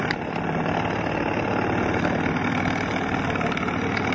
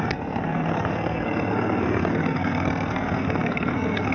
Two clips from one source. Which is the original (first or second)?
first